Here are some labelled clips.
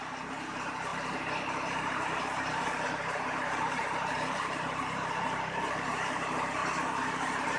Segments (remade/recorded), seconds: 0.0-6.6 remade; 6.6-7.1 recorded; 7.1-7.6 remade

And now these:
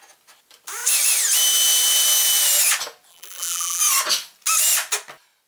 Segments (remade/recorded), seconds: 0.0-3.1 recorded; 3.1-3.8 remade; 3.8-5.5 recorded

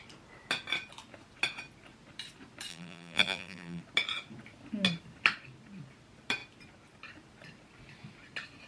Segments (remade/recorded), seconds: 0.0-2.7 recorded; 2.7-3.8 remade; 3.8-8.7 recorded

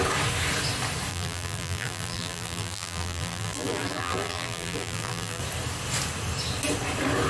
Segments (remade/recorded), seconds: 0.0-1.1 recorded; 1.1-5.4 remade; 5.4-7.3 recorded

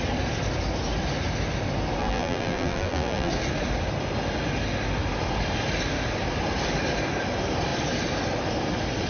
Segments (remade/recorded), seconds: 0.0-2.0 recorded; 2.0-3.3 remade; 3.3-9.1 recorded

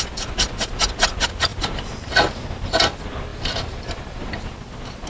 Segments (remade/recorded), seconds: 0.0-3.3 recorded; 3.3-4.3 remade; 4.3-5.1 recorded